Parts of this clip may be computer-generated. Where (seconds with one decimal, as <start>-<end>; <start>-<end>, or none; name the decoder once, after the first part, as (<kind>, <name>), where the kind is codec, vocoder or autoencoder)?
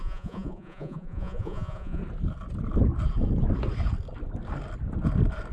0.0-2.0 (vocoder, Vocos)